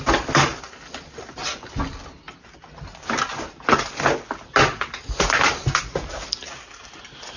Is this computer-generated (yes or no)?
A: no